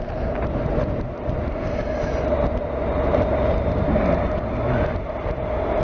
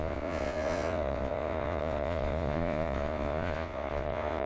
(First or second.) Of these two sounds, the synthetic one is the second